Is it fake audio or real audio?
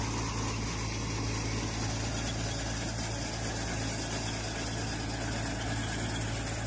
real